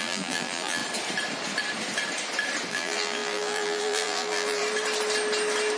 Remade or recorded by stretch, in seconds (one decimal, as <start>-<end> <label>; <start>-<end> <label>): 0.0-0.8 remade; 0.8-2.7 recorded; 2.7-4.6 remade; 4.6-5.8 recorded

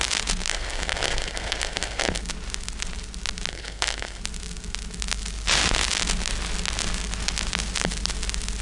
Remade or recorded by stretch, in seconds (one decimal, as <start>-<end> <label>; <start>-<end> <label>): 0.0-0.5 recorded; 0.5-2.2 remade; 2.2-3.5 recorded; 3.5-4.2 remade; 4.2-8.6 recorded

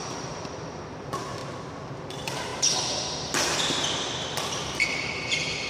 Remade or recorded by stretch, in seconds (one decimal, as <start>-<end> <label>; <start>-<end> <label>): 0.0-1.4 remade; 1.4-2.0 recorded; 2.0-2.5 remade; 2.5-3.6 recorded; 3.6-5.7 remade

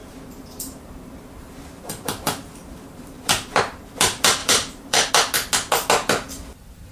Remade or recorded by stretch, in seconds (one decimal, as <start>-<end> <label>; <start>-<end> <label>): 0.0-3.6 remade; 3.6-4.4 recorded; 4.4-5.1 remade; 5.1-6.9 recorded